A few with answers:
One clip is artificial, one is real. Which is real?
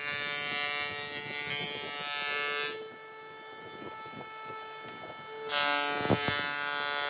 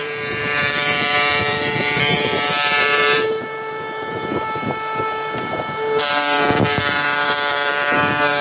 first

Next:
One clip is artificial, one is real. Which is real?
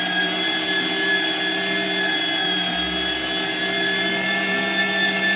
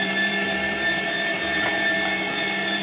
first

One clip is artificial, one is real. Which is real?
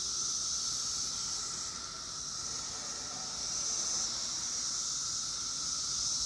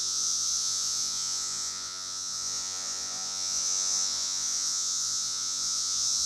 first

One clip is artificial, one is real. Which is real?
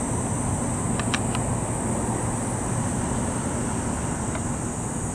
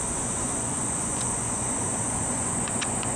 first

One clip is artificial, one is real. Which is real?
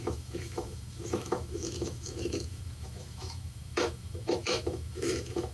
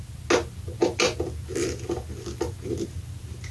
second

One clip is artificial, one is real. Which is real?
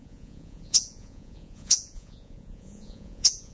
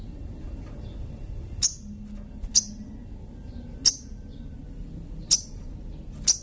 second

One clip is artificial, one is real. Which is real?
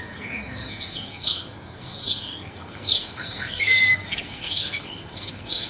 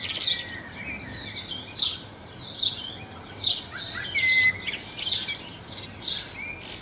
second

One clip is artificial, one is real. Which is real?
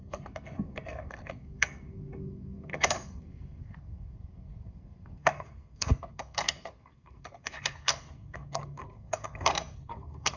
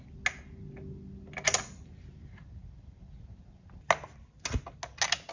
second